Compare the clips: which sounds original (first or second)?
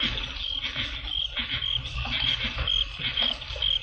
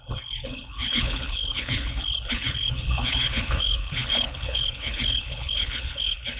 first